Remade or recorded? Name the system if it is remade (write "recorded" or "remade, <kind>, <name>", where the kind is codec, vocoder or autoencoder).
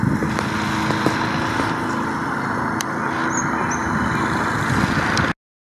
recorded